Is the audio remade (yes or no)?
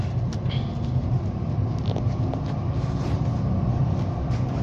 no